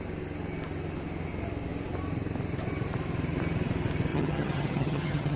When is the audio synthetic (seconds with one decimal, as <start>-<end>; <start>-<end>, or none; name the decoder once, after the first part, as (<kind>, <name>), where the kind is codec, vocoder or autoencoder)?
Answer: 4.1-5.4 (vocoder, HiFi-GAN)